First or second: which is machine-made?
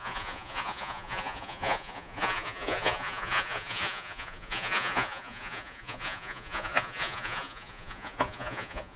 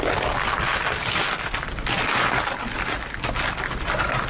first